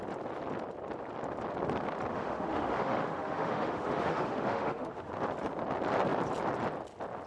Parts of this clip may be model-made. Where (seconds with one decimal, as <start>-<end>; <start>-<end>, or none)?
2.1-5.1